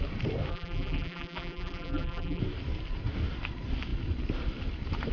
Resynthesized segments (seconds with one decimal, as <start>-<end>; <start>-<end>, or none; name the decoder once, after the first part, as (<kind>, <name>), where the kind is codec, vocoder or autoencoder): 0.5-2.4 (vocoder, BigVGAN v2)